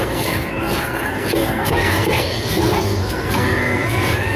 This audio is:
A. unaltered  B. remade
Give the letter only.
B